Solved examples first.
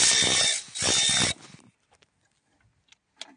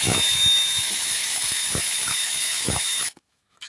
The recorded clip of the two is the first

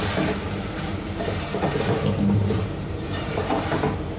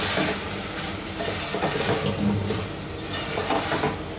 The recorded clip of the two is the second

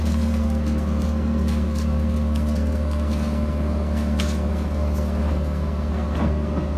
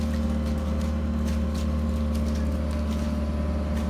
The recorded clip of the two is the second